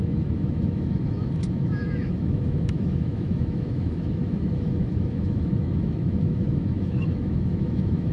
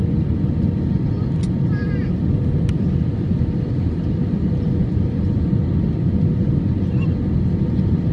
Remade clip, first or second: first